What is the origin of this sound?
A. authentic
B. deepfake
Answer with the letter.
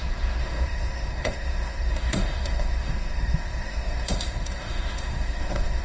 B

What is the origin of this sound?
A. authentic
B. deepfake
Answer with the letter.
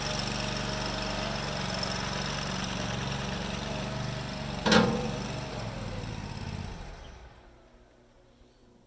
A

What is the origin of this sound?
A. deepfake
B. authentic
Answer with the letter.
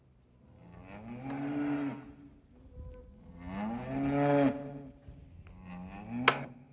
B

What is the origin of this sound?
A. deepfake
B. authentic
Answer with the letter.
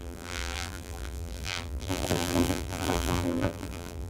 A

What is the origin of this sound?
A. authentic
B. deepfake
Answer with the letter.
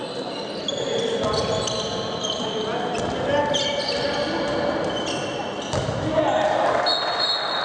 A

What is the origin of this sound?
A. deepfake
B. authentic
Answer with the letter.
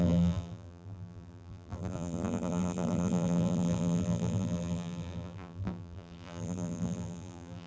A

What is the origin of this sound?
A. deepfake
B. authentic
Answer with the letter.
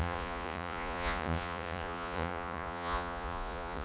A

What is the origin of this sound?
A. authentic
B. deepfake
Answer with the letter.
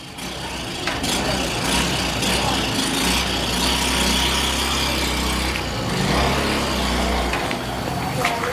A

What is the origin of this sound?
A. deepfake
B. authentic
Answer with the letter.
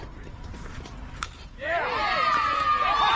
A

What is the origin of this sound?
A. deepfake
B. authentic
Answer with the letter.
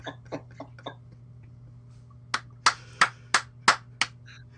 B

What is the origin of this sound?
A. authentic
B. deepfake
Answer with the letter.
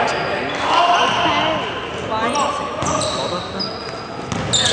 A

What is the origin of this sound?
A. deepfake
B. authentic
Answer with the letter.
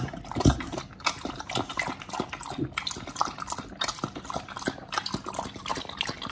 B